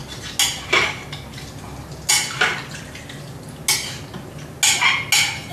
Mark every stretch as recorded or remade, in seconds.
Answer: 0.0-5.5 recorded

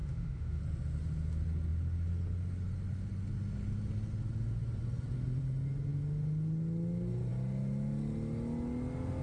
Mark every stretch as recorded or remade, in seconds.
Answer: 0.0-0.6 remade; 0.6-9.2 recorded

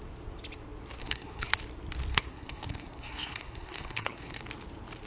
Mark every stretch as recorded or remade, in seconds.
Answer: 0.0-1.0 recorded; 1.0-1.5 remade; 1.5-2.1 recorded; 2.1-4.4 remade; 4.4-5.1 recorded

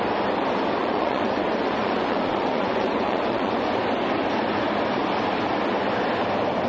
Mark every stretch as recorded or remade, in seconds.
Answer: 0.0-0.8 recorded; 0.8-3.8 remade; 3.8-6.7 recorded